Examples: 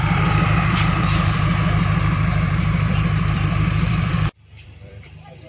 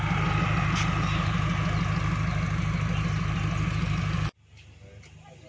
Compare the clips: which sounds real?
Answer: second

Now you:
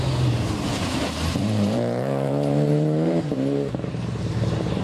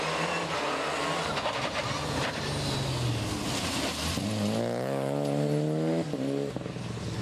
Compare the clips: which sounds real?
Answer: second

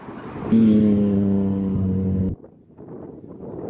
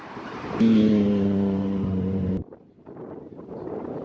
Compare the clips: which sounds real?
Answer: first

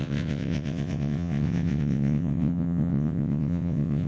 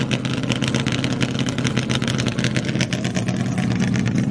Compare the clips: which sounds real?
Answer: second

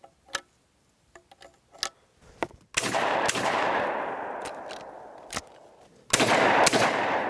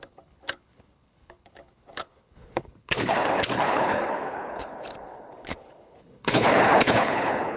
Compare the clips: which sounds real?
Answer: first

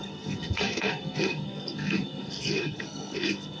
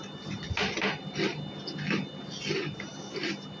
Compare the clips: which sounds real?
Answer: second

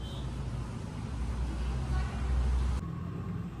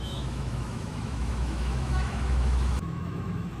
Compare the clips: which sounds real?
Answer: first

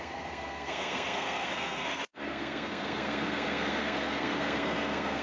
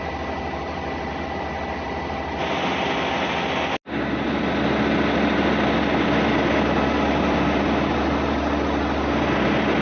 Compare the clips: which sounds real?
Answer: second